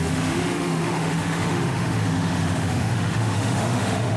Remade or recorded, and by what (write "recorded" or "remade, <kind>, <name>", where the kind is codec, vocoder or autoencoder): remade, autoencoder, DAC-VAE